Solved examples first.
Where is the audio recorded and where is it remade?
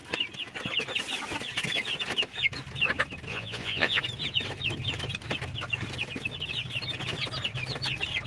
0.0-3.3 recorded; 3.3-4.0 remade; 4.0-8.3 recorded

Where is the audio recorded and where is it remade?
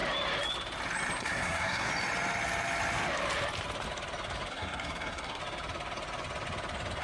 0.0-1.2 recorded; 1.2-1.9 remade; 1.9-4.5 recorded; 4.5-5.4 remade; 5.4-7.0 recorded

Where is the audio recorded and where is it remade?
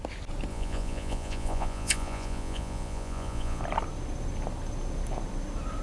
0.0-0.5 recorded; 0.5-3.6 remade; 3.6-5.8 recorded